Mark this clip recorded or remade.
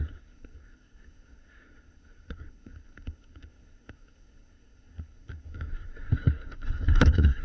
remade